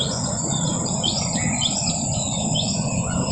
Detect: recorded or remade remade